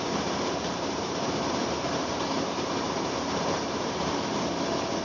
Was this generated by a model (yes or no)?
yes